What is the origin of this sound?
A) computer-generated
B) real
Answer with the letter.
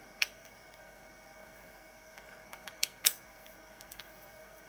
A